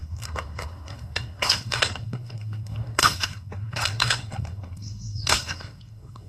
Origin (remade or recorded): remade